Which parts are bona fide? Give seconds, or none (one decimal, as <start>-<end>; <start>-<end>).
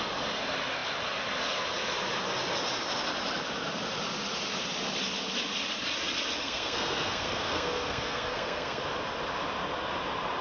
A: 0.0-6.4; 8.8-10.4